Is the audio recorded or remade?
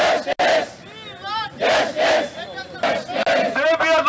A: recorded